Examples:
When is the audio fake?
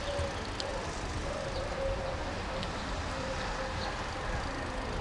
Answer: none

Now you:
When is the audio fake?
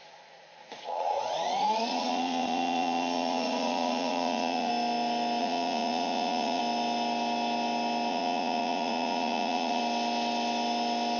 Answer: 0.0-4.7; 5.4-6.6; 8.1-9.8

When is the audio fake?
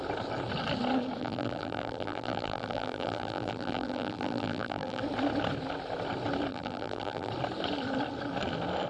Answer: 1.2-5.0; 6.5-7.3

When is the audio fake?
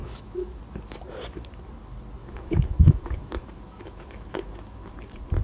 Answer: 0.0-0.6; 2.2-4.9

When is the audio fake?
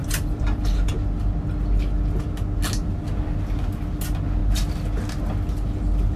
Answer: 0.0-0.9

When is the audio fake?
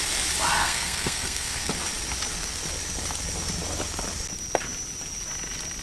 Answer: 0.6-1.7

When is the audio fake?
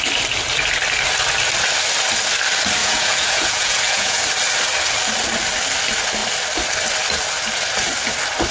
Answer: 2.8-4.2